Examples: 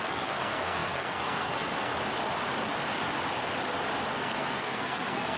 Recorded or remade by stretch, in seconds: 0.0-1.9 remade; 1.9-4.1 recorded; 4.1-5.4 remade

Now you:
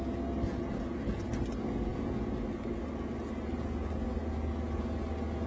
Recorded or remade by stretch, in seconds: 0.0-5.5 recorded